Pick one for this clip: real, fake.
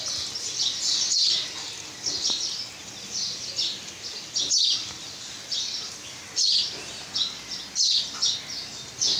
real